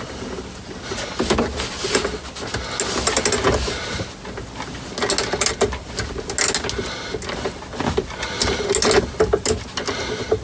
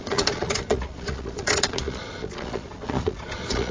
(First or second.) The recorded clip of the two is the first